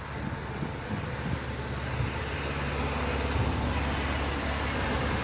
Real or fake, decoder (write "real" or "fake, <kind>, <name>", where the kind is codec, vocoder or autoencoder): real